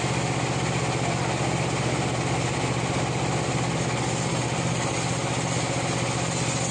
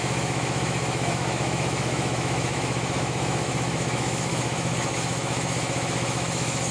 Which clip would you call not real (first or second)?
second